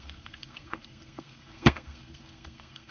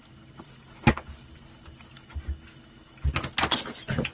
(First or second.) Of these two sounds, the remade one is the first